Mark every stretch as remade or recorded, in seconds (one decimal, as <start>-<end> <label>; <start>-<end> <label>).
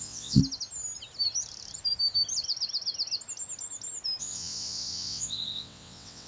0.0-0.4 remade; 0.4-4.2 recorded; 4.2-6.3 remade